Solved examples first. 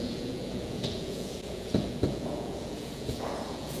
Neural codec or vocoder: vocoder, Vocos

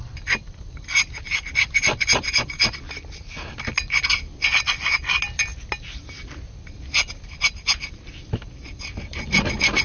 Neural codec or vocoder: none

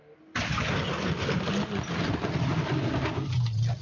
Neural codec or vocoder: none